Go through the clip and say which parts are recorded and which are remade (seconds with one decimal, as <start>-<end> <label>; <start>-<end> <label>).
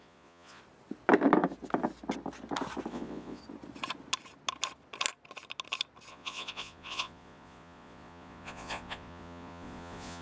0.0-0.6 remade; 0.6-2.9 recorded; 2.9-3.4 remade; 3.4-6.1 recorded; 6.1-10.2 remade